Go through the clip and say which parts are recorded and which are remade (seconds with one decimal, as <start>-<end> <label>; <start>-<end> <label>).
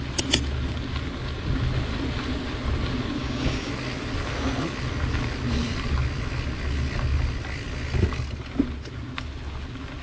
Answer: 0.0-3.2 recorded; 3.2-3.7 remade; 3.7-10.0 recorded